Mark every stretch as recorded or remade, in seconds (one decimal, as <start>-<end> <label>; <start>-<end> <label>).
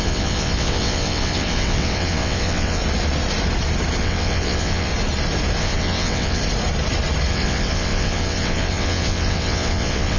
0.0-2.8 remade; 2.8-4.0 recorded; 4.0-4.9 remade; 4.9-5.6 recorded; 5.6-6.4 remade; 6.4-7.3 recorded; 7.3-10.2 remade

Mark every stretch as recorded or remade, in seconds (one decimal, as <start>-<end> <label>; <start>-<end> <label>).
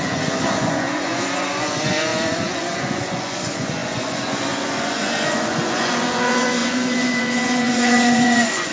0.0-8.7 remade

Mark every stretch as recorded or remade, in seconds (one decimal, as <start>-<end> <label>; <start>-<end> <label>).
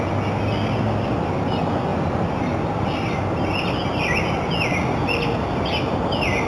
0.0-6.5 recorded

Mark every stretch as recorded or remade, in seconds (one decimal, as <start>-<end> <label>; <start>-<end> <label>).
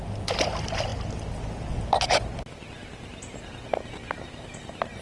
0.0-5.0 recorded